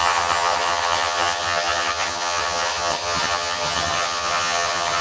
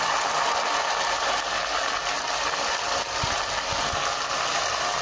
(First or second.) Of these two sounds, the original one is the second